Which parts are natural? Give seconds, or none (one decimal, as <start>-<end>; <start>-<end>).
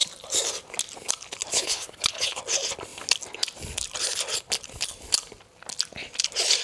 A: 0.0-1.5; 2.4-6.6